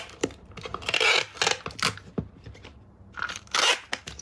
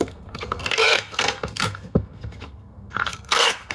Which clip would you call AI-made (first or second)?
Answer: second